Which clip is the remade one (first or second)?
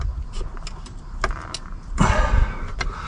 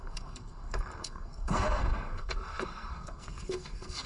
second